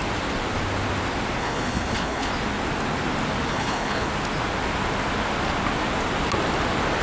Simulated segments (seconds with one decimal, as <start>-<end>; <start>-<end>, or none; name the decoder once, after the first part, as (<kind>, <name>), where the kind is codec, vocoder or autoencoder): 1.4-2.3 (codec, HILCodec); 3.5-4.1